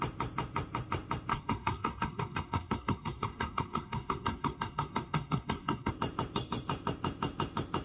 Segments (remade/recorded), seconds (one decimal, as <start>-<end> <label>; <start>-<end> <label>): 0.0-1.3 recorded; 1.3-5.9 remade; 5.9-7.8 recorded